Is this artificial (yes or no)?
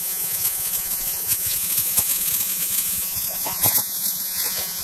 yes